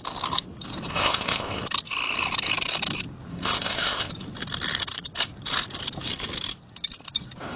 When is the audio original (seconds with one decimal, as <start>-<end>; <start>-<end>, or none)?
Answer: 0.0-0.9; 1.6-3.3; 4.1-7.6